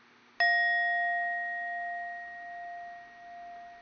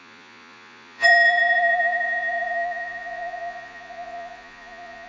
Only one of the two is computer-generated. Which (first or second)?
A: second